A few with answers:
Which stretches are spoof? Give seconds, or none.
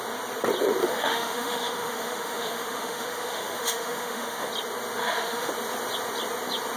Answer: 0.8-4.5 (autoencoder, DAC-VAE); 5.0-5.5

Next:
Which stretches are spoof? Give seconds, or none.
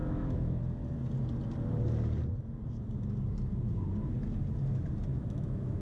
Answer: 0.0-0.6 (autoencoder, DAC-VAE); 5.1-5.8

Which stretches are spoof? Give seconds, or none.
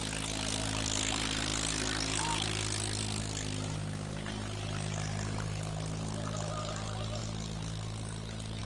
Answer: none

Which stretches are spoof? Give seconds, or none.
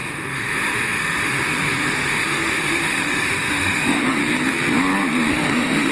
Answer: 0.0-4.2 (autoencoder, DAC-VAE); 5.3-5.9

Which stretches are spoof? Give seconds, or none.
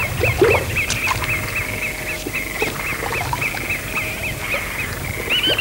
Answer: none